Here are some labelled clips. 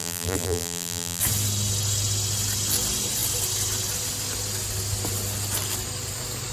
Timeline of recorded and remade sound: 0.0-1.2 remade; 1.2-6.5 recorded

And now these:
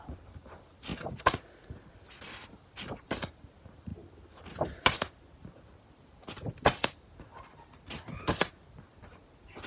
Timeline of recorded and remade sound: 0.0-9.7 recorded

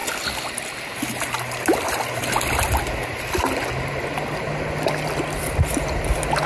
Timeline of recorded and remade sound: 0.0-6.5 recorded

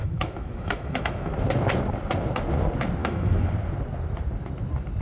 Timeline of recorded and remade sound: 0.0-1.3 remade; 1.3-3.0 recorded; 3.0-3.5 remade; 3.5-5.0 recorded

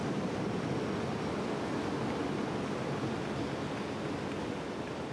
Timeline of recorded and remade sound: 0.0-0.5 remade; 0.5-5.1 recorded

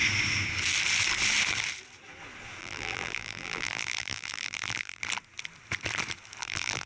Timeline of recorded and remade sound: 0.0-2.6 recorded; 2.6-5.0 remade; 5.0-6.4 recorded; 6.4-6.9 remade

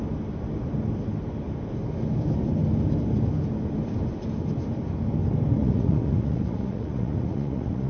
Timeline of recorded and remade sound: 0.0-5.6 recorded; 5.6-7.9 remade